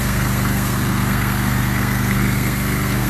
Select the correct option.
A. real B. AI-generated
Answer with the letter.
B